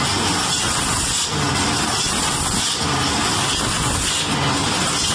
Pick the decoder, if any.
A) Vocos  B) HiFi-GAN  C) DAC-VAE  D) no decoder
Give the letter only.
D